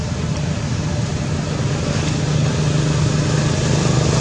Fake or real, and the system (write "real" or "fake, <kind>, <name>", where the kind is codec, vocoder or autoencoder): real